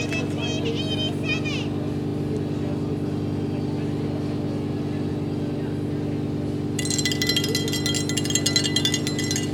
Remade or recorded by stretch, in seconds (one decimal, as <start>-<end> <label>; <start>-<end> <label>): 0.0-9.5 recorded